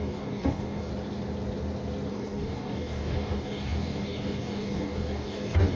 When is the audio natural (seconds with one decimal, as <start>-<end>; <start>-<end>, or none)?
0.9-2.1